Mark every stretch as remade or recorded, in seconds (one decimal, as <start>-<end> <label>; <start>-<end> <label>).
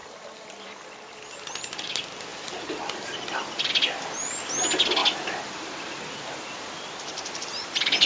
0.0-0.8 remade; 0.8-2.3 recorded; 2.3-3.7 remade; 3.7-5.0 recorded; 5.0-8.1 remade